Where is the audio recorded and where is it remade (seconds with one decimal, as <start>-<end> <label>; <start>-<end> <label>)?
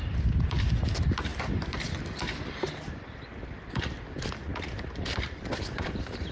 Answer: 0.0-6.3 remade